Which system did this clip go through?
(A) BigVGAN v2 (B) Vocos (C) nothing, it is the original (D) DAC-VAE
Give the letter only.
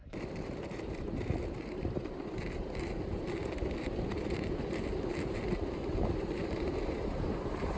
A